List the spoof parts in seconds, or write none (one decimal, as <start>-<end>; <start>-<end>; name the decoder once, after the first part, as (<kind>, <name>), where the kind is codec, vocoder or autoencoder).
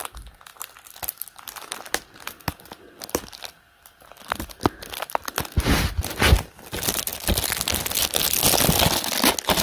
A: none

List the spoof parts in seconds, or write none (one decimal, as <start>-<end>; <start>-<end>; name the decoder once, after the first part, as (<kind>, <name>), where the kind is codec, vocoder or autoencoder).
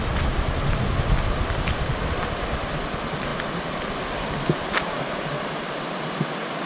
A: 3.3-5.0 (vocoder, BigVGAN v2)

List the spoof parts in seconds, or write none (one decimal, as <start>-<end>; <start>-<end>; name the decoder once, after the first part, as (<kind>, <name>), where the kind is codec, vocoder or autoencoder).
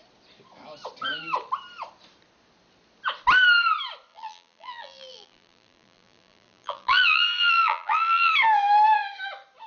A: 4.1-8.3 (vocoder, BigVGAN v2)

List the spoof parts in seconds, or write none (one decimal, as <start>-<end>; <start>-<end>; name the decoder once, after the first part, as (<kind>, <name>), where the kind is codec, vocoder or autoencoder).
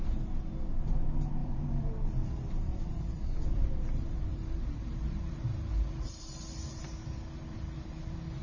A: 1.4-6.2 (vocoder, BigVGAN v2)